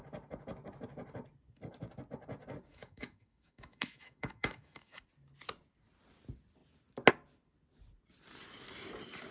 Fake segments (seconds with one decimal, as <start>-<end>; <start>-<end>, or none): 2.7-5.0